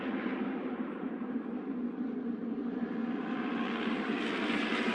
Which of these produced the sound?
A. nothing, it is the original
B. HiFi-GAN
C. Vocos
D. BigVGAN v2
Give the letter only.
D